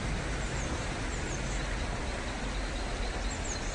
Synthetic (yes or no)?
no